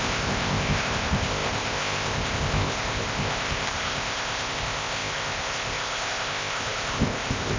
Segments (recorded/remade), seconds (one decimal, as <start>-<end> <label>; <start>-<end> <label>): 0.0-7.6 remade